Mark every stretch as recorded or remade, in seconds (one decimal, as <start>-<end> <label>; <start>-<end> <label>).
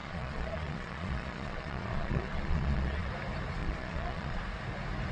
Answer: 0.0-3.1 remade; 3.1-3.6 recorded; 3.6-4.4 remade; 4.4-5.1 recorded